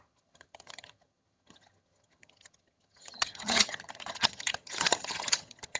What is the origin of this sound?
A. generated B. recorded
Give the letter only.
A